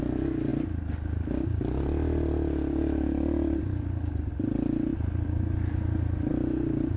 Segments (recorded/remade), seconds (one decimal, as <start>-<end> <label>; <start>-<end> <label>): 0.0-7.0 recorded